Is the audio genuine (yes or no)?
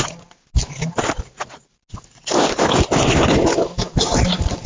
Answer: yes